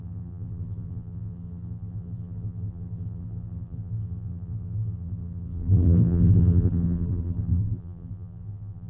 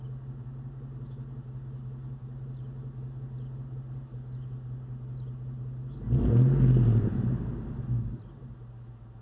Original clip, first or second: second